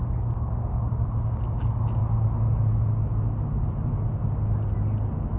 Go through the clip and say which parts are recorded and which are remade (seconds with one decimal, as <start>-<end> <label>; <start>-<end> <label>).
0.0-1.6 remade; 1.6-5.4 recorded